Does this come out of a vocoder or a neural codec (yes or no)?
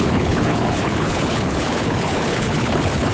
yes